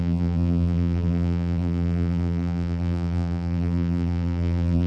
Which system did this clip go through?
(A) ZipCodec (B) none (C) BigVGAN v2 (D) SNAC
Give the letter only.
C